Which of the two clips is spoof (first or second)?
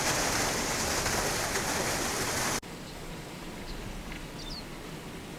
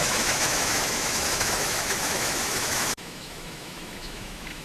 second